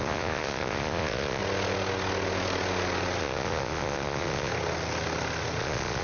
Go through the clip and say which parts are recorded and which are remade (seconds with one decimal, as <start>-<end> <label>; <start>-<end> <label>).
0.0-1.4 remade; 1.4-3.2 recorded; 3.2-4.5 remade; 4.5-5.6 recorded; 5.6-6.0 remade